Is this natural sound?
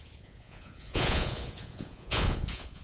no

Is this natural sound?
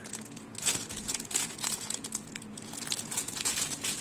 no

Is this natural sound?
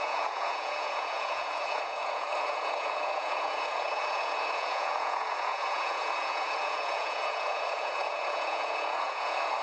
no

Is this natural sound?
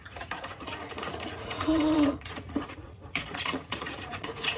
no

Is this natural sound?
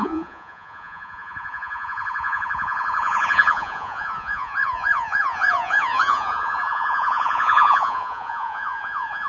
no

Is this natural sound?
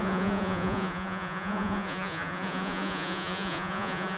no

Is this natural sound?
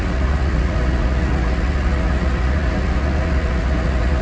no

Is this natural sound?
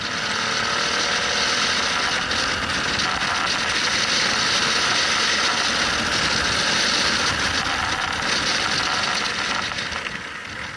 yes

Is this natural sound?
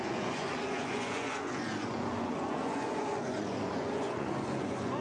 no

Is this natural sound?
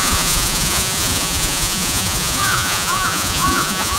no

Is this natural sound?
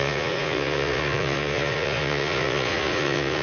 no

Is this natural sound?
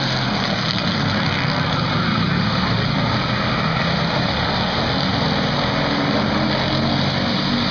yes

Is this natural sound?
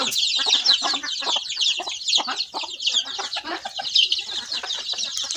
yes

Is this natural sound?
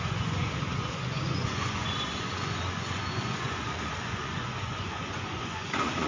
no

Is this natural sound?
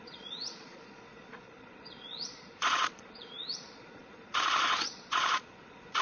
no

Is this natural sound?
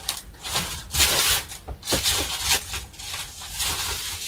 yes